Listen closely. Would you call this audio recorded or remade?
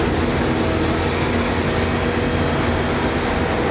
recorded